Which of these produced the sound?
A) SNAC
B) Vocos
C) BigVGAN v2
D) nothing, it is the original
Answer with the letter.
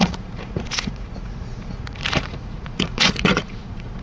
B